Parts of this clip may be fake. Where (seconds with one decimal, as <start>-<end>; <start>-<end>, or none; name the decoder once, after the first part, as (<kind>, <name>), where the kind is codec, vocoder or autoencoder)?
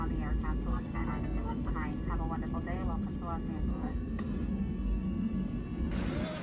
0.7-1.7 (codec, SNAC); 3.7-5.9